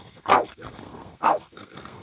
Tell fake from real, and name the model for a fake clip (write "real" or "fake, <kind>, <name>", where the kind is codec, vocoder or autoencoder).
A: fake, codec, SNAC